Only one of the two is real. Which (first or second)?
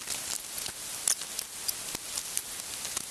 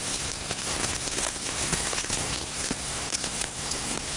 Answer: first